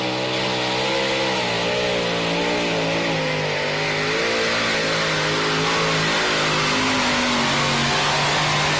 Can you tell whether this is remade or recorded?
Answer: recorded